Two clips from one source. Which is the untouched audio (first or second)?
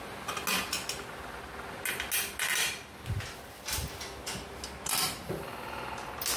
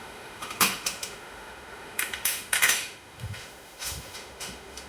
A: first